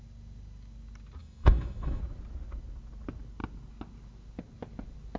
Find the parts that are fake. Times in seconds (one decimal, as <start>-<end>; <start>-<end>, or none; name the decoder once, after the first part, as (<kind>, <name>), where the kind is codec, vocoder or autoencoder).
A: 1.2-2.0 (autoencoder, DAC-VAE)